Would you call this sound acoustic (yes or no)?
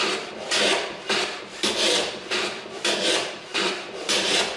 no